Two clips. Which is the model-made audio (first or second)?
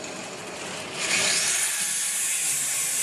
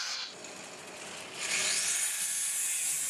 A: first